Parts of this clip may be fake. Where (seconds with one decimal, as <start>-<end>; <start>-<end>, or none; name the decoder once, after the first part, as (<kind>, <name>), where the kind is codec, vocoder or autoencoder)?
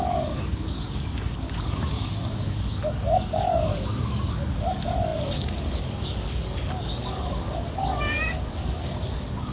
0.0-3.7 (codec, DAC); 4.3-9.5